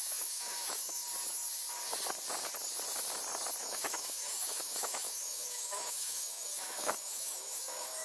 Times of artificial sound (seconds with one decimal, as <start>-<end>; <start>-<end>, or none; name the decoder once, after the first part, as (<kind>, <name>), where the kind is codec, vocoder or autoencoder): 0.0-1.0 (autoencoder, DAC-VAE); 3.6-8.0